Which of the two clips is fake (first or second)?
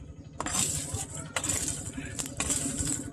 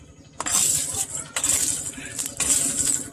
first